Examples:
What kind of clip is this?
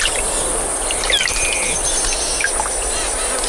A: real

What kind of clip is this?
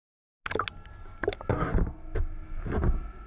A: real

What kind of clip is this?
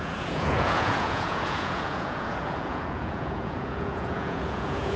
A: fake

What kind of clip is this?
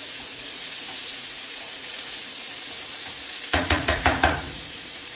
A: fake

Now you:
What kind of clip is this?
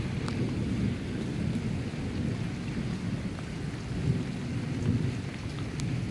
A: real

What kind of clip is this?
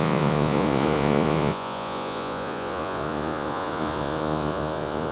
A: fake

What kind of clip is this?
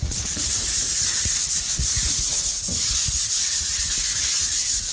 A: fake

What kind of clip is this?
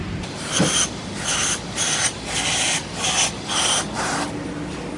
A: real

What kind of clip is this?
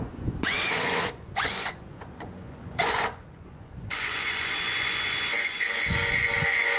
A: fake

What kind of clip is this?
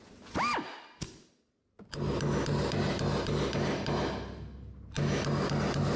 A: real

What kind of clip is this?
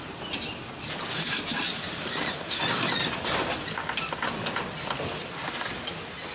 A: real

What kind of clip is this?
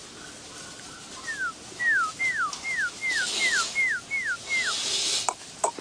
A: real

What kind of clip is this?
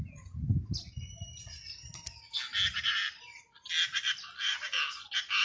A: real